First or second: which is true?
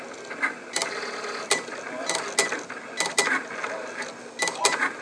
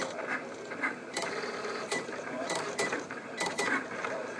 first